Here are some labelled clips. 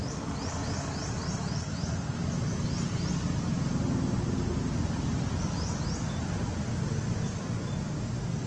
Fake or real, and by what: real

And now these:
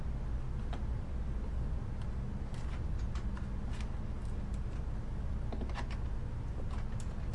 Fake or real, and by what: real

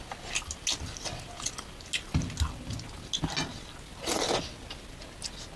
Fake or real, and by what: real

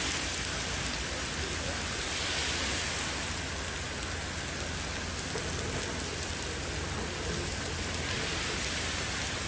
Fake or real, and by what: real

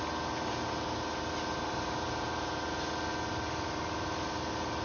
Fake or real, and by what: real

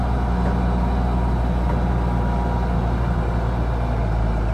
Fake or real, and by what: real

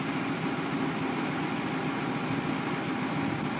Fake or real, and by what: real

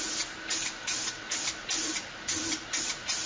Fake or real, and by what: real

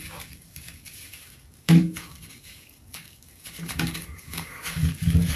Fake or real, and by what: fake, codec, DAC